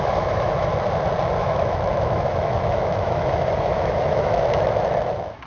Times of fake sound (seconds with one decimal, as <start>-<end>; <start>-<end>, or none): 0.0-0.7; 1.4-5.5